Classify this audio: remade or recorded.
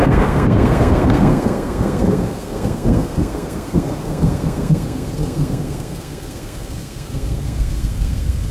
remade